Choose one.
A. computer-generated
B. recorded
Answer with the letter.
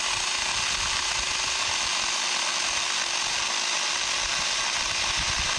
B